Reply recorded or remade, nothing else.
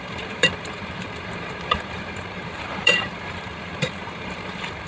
remade